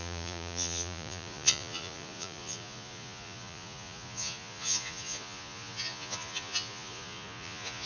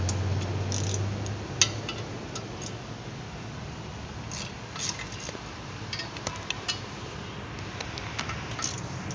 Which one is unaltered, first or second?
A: second